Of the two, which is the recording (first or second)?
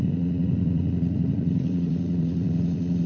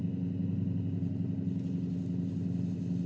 second